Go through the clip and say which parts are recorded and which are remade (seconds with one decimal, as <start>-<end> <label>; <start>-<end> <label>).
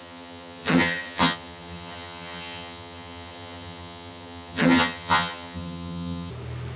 0.0-6.3 remade; 6.3-6.8 recorded